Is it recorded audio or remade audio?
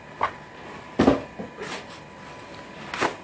recorded